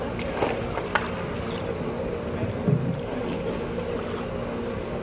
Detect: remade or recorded recorded